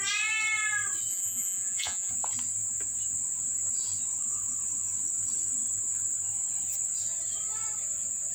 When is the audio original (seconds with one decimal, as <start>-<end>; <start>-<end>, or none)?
0.0-1.1; 2.1-8.3